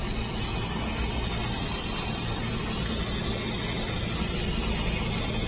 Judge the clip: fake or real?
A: real